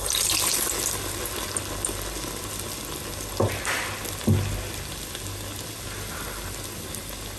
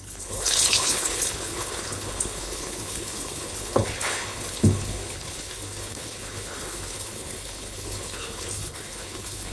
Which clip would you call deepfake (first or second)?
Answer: second